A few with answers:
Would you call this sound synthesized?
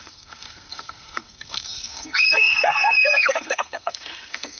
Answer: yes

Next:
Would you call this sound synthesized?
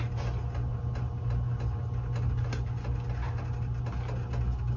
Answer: no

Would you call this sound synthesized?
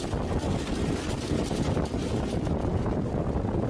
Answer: no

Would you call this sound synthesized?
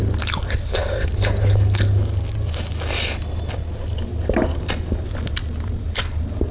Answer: no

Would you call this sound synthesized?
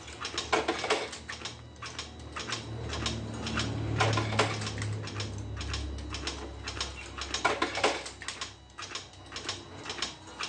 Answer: no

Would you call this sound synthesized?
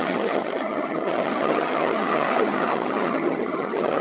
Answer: yes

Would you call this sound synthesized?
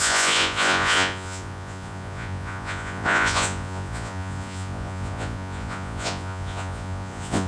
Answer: yes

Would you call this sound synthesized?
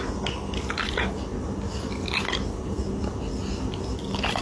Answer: no